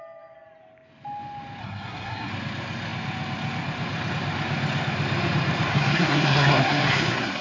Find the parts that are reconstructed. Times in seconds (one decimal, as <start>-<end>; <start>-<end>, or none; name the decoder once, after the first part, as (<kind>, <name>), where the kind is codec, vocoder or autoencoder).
1.6-2.3 (codec, SNAC); 5.7-7.4